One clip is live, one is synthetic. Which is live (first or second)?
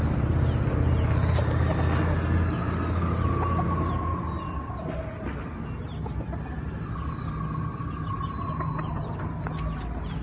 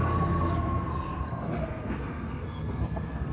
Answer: first